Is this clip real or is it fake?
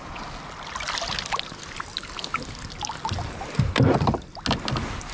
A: real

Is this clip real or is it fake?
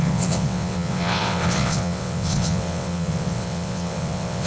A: fake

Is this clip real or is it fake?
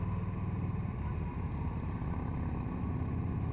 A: real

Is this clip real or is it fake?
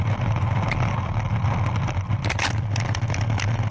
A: real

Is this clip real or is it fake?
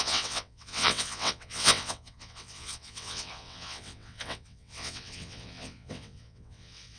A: fake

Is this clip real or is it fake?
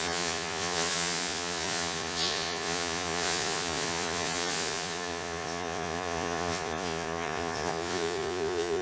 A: fake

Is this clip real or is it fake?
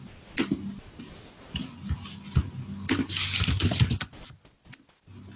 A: real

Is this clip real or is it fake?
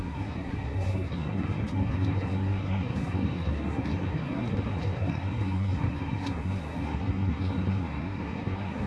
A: fake